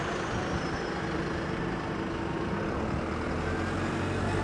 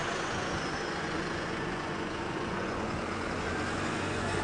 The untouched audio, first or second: first